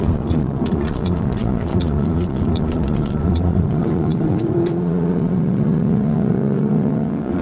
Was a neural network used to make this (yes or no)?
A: yes